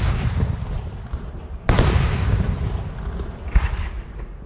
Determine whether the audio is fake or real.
real